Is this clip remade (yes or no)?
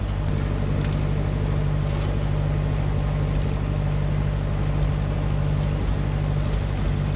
no